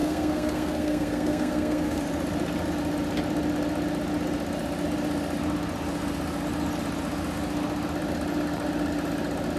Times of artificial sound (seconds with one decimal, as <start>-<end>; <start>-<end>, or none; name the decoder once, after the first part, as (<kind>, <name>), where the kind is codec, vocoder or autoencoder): 0.0-2.0 (codec, SNAC)